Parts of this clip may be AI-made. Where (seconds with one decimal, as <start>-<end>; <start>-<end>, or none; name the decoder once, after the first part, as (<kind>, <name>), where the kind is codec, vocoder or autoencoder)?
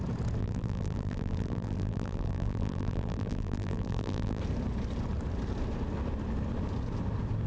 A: 0.4-4.4 (vocoder, BigVGAN v2)